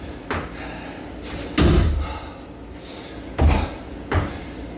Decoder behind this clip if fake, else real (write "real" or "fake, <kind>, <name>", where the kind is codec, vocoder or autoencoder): real